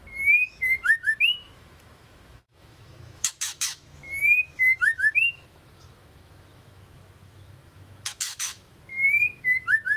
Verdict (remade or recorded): remade